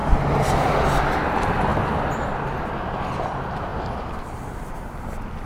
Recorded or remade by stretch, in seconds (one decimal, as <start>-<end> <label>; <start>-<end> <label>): 0.0-5.5 recorded